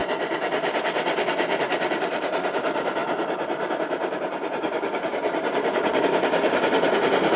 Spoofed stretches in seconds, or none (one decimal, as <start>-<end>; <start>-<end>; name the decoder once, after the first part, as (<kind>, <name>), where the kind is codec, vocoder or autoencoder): 1.9-7.4 (vocoder, BigVGAN v2)